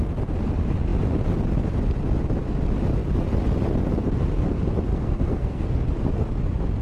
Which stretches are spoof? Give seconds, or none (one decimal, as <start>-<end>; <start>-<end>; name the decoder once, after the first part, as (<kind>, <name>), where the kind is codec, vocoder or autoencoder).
4.9-5.7 (codec, SNAC)